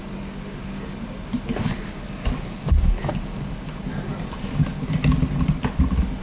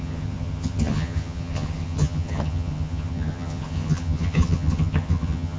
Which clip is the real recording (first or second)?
first